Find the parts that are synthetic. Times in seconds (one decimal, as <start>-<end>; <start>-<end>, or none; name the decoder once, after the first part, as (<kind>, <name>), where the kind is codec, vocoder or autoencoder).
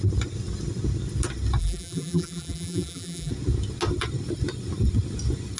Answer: 1.6-3.3 (vocoder, BigVGAN v2)